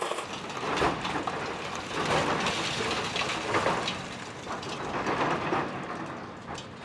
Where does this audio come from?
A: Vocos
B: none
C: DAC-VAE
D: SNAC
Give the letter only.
B